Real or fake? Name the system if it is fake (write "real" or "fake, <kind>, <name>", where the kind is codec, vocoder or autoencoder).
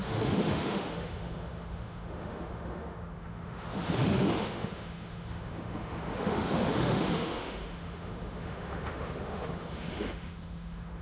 fake, autoencoder, DAC-VAE